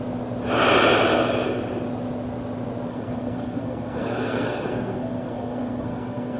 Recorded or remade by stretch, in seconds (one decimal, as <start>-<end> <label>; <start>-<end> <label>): 0.0-2.9 recorded; 2.9-6.4 remade